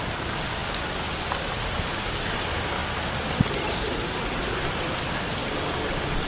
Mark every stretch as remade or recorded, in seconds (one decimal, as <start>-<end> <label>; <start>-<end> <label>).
0.0-6.3 recorded